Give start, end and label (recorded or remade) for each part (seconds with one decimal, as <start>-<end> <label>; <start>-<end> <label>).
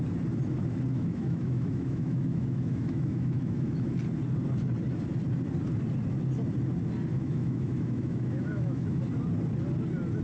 0.0-0.9 recorded; 0.9-4.0 remade; 4.0-7.1 recorded; 7.1-9.0 remade; 9.0-10.2 recorded